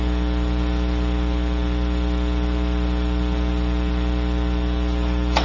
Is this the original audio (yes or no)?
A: yes